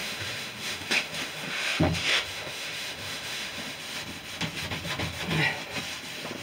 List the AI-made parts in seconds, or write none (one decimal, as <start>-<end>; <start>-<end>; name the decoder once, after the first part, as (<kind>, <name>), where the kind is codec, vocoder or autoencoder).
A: 0.0-3.8 (autoencoder, DAC-VAE)